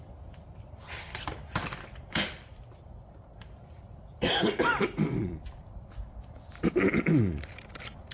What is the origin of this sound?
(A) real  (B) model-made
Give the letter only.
B